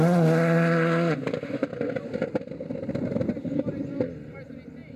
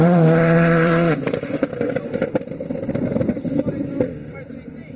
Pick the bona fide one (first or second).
first